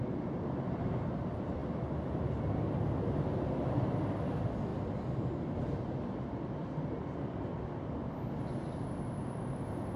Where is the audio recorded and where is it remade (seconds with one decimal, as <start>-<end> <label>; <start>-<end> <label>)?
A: 0.0-10.0 recorded